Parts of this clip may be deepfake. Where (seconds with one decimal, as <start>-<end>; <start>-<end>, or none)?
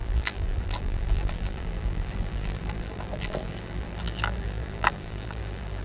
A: 0.0-5.8